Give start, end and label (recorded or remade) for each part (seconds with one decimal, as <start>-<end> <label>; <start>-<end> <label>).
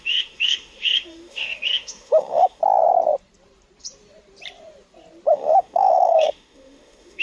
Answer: 0.0-2.6 remade; 2.6-5.3 recorded; 5.3-7.2 remade